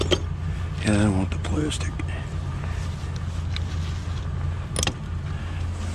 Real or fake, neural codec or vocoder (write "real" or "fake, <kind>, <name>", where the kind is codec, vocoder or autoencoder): real